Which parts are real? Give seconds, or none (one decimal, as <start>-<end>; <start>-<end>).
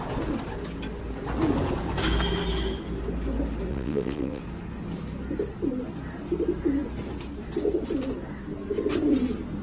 0.0-3.7; 4.4-9.6